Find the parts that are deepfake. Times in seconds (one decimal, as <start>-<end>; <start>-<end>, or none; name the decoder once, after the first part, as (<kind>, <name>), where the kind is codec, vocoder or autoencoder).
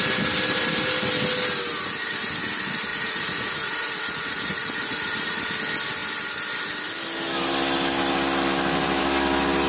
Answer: 2.9-5.6 (vocoder, Vocos)